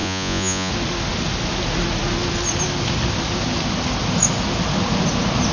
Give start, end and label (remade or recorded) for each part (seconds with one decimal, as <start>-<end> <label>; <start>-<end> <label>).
0.0-0.7 remade; 0.7-5.5 recorded